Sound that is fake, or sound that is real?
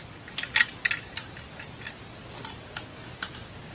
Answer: real